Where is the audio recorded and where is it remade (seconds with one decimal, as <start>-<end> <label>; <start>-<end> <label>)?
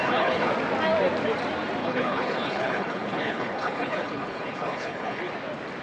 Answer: 0.0-0.5 remade; 0.5-1.8 recorded; 1.8-5.3 remade; 5.3-5.8 recorded